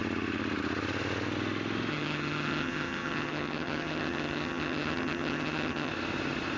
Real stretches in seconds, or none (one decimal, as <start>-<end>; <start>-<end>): 0.0-1.9; 5.9-6.6